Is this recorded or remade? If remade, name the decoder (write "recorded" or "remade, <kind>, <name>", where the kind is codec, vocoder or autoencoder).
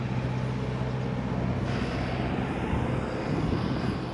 recorded